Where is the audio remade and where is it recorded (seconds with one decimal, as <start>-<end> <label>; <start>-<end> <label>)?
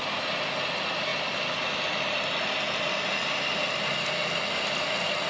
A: 0.0-5.3 recorded